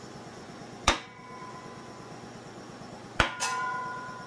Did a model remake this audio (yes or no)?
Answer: yes